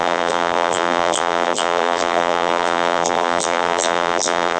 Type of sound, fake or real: fake